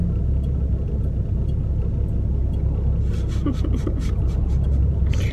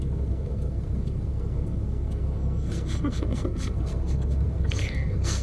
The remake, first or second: second